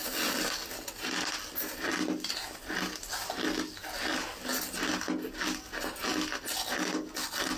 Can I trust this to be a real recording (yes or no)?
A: yes